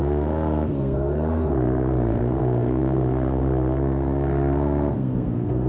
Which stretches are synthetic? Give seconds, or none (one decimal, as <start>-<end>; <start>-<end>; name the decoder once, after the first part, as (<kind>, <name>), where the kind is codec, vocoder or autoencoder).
0.0-5.7 (codec, SNAC)